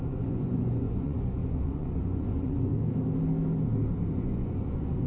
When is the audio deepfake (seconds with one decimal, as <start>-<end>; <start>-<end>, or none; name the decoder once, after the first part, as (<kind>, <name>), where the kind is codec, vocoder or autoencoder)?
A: 0.0-2.7 (vocoder, Vocos); 4.1-5.1